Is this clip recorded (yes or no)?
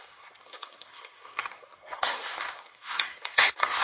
no